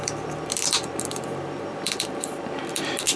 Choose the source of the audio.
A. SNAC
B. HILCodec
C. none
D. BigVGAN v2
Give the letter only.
D